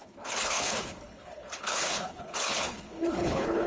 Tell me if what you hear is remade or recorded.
remade